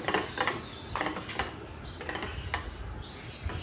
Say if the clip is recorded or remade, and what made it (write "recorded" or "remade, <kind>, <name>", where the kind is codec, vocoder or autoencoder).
recorded